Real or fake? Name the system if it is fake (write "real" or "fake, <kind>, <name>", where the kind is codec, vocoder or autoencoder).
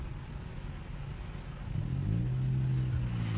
real